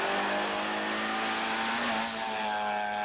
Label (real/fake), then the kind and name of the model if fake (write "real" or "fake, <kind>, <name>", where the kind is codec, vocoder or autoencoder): real